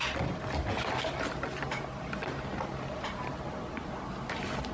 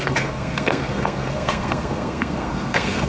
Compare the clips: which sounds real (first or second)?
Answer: first